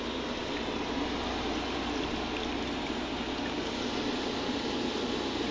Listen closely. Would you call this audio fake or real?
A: real